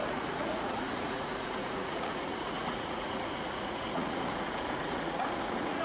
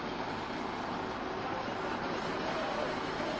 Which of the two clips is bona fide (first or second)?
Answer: second